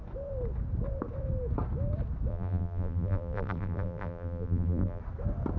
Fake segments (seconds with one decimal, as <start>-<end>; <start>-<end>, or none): 2.3-5.0